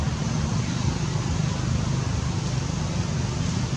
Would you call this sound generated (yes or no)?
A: no